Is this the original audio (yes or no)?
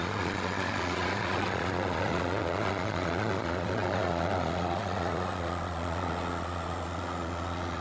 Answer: no